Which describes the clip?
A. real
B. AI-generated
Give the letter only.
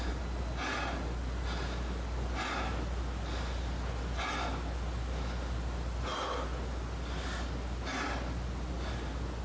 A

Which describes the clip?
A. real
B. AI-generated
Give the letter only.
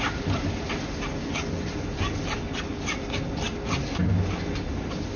A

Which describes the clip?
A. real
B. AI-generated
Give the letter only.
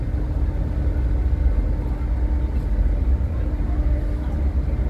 A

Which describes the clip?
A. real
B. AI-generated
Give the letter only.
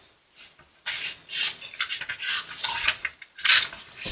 A